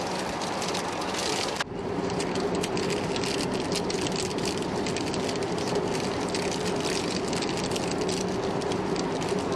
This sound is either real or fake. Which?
real